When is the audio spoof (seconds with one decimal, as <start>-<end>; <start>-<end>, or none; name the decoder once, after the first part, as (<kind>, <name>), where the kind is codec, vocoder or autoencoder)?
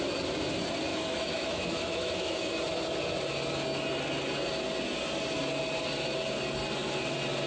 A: 0.9-2.6 (autoencoder, DAC-VAE)